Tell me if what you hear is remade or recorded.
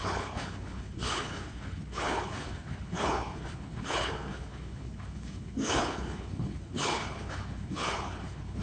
remade